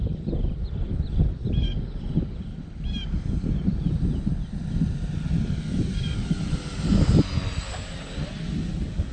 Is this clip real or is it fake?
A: real